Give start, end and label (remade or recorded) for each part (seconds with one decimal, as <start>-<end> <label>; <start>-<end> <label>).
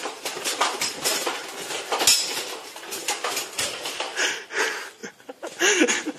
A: 0.0-1.1 remade; 1.1-3.0 recorded; 3.0-4.6 remade; 4.6-6.2 recorded